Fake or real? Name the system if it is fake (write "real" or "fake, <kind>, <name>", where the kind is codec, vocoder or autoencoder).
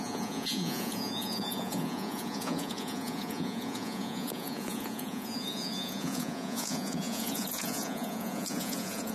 fake, vocoder, Vocos